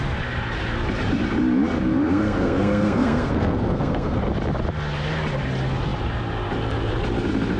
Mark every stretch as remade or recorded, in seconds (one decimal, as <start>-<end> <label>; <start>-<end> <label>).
0.0-1.9 recorded; 1.9-4.2 remade; 4.2-7.6 recorded